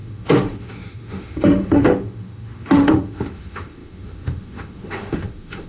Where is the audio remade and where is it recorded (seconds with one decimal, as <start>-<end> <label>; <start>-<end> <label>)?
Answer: 0.0-5.7 remade